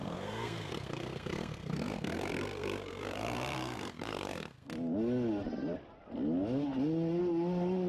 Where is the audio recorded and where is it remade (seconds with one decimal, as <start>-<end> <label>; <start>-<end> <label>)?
0.0-4.7 remade; 4.7-7.9 recorded